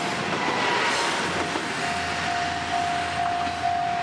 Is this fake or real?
real